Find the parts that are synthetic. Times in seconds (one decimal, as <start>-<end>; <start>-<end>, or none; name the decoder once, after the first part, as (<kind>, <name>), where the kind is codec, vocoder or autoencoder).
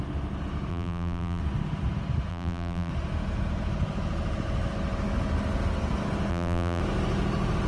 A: 0.7-1.4 (vocoder, BigVGAN v2); 2.3-2.9; 6.3-6.8